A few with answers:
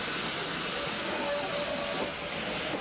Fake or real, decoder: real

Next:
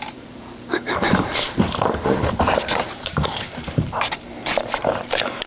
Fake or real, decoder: fake, vocoder, BigVGAN v2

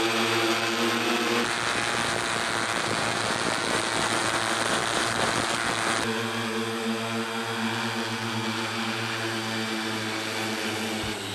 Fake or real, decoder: real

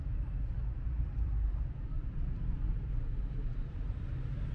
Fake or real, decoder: fake, vocoder, BigVGAN v2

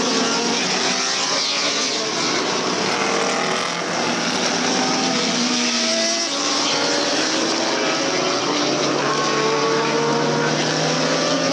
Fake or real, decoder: real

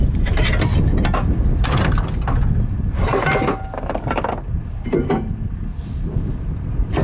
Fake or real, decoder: real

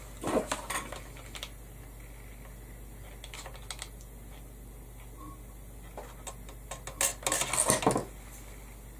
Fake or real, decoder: real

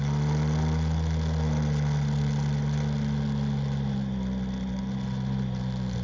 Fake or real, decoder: real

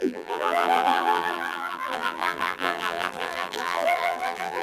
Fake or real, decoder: fake, vocoder, BigVGAN v2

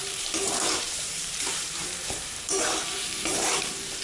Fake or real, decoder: fake, vocoder, BigVGAN v2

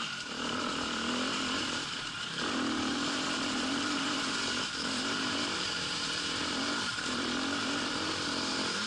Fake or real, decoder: fake, vocoder, BigVGAN v2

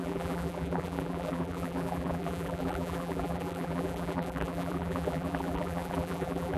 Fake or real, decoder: fake, vocoder, BigVGAN v2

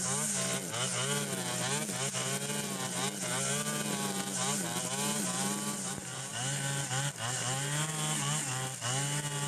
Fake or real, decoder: real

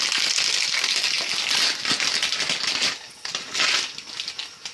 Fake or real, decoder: real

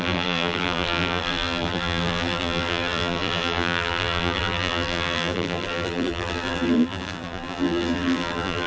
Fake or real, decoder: fake, vocoder, BigVGAN v2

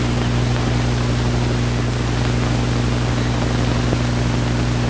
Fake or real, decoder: real